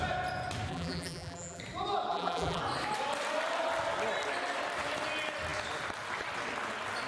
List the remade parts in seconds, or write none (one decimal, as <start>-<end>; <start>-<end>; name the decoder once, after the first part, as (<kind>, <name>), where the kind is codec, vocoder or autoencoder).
0.7-1.6 (vocoder, BigVGAN v2); 2.1-2.6